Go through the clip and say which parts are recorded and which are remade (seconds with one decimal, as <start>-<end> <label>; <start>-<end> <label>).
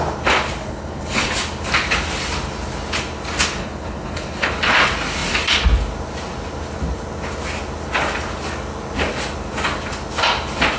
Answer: 0.0-0.6 recorded; 0.6-1.3 remade; 1.3-3.6 recorded; 3.6-4.5 remade; 4.5-10.8 recorded